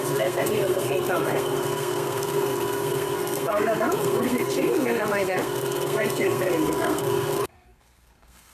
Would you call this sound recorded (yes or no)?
no